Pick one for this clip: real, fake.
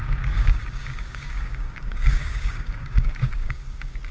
fake